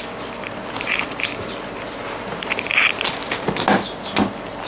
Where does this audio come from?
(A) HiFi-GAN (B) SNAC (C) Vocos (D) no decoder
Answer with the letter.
D